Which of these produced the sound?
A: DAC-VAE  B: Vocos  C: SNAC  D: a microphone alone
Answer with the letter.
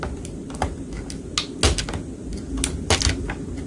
D